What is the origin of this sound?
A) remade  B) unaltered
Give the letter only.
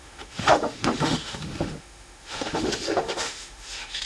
A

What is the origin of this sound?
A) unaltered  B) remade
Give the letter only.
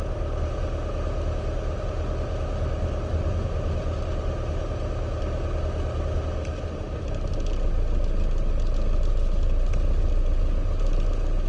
A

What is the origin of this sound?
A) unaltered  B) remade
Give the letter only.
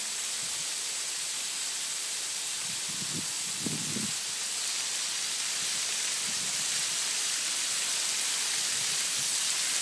A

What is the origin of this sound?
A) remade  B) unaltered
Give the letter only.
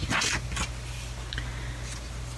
B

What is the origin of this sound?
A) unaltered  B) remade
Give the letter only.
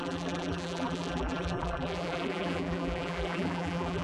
B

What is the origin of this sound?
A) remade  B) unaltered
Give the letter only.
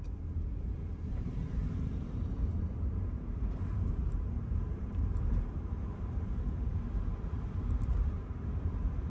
A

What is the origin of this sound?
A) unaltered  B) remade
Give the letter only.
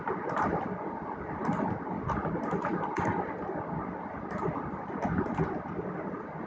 A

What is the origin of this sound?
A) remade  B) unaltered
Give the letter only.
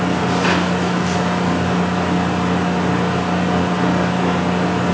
B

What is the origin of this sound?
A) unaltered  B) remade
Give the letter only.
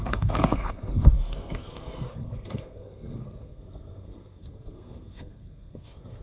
B